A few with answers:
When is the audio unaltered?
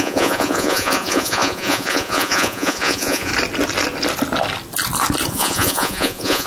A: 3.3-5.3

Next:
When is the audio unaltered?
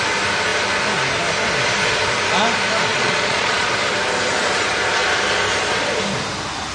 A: 0.0-2.9; 3.7-6.7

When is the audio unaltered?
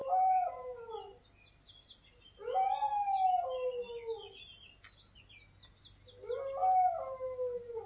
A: 0.8-7.9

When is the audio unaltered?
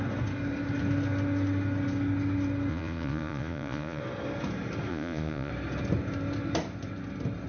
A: 0.0-2.7; 4.0-4.9; 5.5-7.5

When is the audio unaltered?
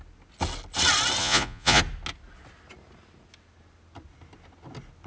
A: 0.0-1.2; 1.8-5.1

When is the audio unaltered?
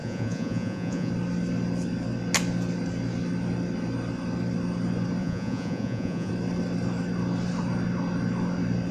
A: 1.1-5.2; 6.3-8.9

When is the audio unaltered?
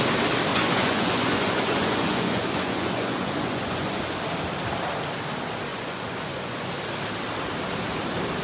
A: 0.0-0.5; 4.0-5.7; 6.7-8.4